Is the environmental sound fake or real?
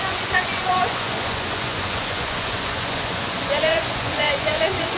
fake